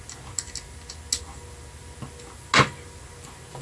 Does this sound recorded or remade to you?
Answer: recorded